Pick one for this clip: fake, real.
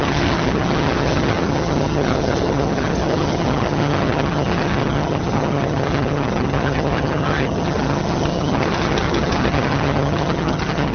fake